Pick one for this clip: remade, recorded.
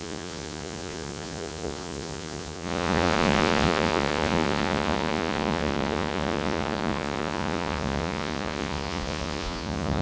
remade